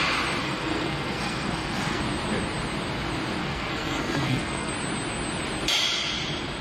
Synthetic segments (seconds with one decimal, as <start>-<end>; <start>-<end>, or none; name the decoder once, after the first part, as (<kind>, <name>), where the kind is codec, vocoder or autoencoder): 0.4-2.0 (codec, SNAC); 3.4-4.7